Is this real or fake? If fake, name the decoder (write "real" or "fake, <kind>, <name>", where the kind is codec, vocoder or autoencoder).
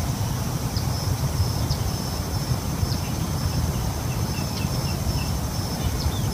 fake, vocoder, BigVGAN v2